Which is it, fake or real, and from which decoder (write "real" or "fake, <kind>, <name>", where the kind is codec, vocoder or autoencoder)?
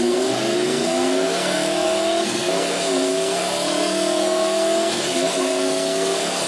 fake, codec, SNAC